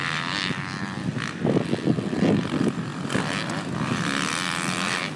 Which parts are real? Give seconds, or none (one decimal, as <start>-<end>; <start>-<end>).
0.0-5.2